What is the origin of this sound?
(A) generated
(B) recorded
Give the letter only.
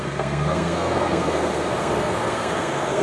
A